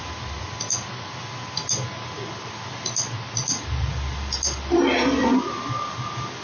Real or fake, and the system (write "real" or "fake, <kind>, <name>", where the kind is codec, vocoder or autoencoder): real